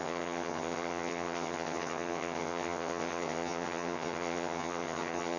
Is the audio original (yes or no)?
no